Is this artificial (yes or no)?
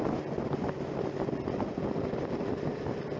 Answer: no